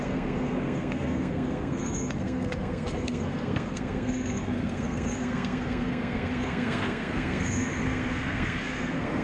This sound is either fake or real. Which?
fake